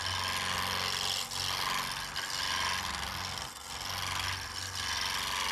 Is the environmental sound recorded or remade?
recorded